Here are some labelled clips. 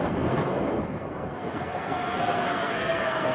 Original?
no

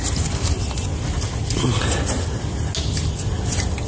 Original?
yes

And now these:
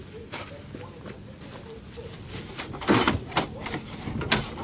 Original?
yes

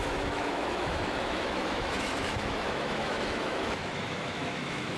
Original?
no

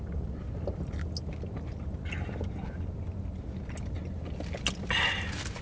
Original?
yes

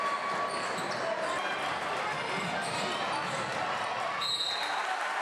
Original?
yes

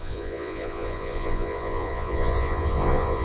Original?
no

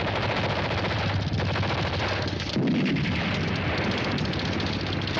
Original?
yes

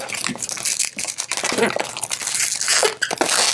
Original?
yes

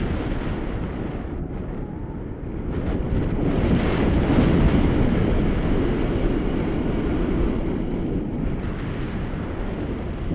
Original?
yes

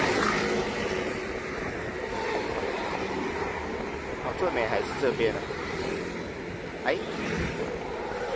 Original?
yes